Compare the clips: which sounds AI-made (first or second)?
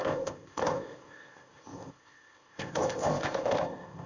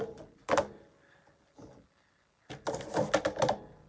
first